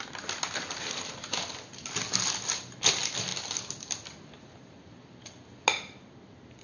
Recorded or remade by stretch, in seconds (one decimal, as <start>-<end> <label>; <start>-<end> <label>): 0.0-6.6 recorded